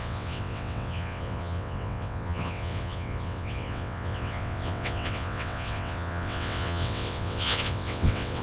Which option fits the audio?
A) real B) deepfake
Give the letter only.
B